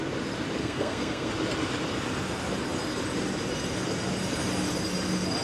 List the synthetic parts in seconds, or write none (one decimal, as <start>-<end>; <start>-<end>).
0.6-1.3